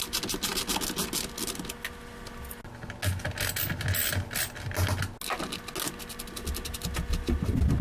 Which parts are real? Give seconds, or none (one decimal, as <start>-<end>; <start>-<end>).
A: 0.0-7.8

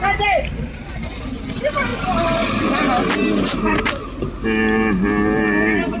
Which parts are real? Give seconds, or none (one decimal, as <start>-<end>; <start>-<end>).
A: 0.0-6.0

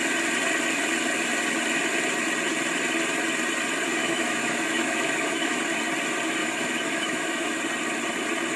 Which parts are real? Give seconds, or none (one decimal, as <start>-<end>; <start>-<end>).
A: 0.0-4.0; 5.6-6.4; 7.6-8.6

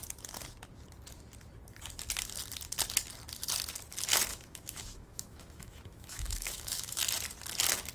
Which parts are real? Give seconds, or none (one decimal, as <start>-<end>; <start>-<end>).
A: 0.0-4.3; 7.0-7.9

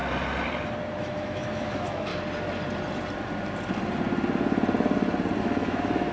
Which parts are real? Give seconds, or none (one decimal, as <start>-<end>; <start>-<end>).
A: 0.0-1.0; 2.1-5.4

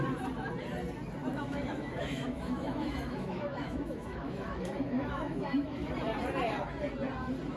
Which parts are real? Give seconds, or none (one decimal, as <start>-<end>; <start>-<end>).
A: 0.0-1.3; 5.9-7.6